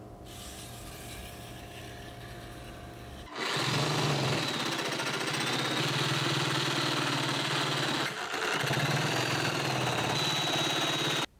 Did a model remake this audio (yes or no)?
no